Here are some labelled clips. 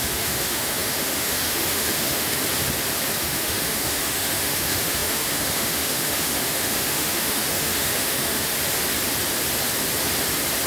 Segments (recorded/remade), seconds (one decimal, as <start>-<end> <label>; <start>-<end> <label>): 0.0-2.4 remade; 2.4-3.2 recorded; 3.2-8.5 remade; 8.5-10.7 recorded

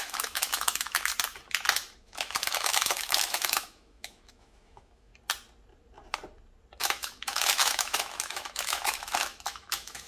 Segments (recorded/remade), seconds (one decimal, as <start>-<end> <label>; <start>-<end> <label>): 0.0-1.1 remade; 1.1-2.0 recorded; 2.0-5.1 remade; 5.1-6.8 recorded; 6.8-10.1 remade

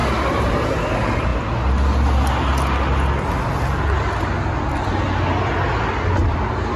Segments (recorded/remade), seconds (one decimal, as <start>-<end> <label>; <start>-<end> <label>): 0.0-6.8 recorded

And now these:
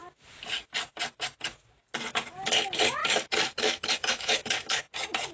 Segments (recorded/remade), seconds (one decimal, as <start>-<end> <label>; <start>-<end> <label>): 0.0-3.0 recorded; 3.0-4.8 remade; 4.8-5.3 recorded